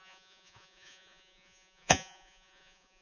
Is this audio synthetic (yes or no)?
yes